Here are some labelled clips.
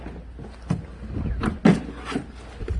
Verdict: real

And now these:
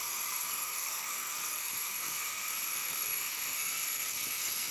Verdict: fake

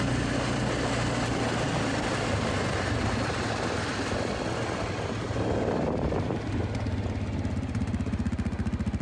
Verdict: real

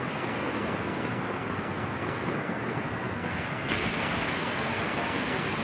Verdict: fake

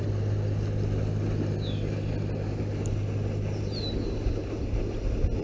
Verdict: real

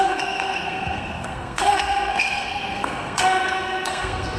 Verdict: fake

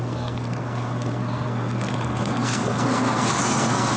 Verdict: fake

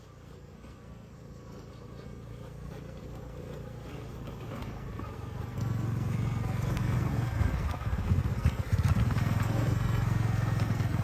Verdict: fake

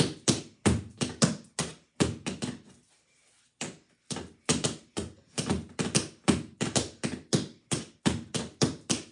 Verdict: real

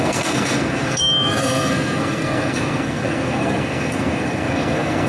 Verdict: fake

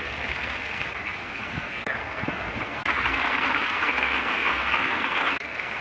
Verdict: fake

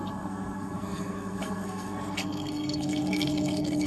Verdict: fake